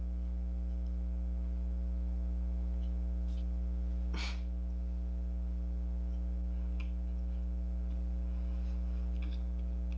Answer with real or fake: real